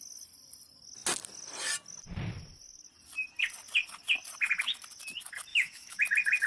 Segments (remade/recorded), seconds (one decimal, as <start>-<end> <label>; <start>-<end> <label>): 0.0-5.5 recorded; 5.5-6.0 remade; 6.0-6.5 recorded